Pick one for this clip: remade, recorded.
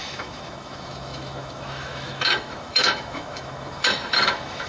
remade